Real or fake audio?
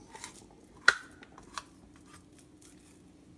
real